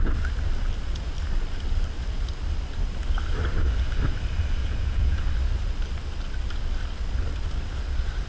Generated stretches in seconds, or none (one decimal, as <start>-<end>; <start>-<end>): 4.6-5.2